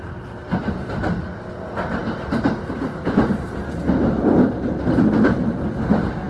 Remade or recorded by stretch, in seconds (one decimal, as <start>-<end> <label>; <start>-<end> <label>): 0.0-6.3 recorded